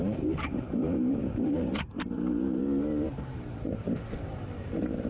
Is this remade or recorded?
remade